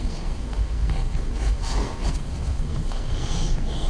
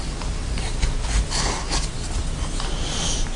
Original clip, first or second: second